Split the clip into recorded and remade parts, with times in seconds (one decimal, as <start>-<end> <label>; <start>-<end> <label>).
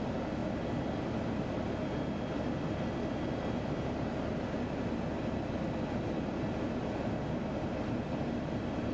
0.0-8.9 recorded